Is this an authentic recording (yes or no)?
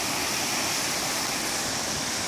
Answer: yes